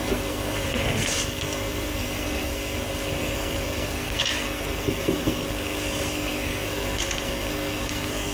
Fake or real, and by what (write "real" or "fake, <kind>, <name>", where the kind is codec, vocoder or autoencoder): fake, codec, SNAC